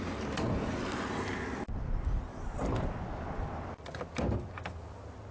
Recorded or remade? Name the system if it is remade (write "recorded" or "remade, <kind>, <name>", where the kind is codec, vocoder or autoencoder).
recorded